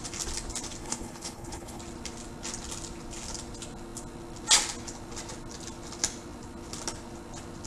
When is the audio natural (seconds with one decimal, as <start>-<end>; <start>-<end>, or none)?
0.0-0.8; 1.8-7.7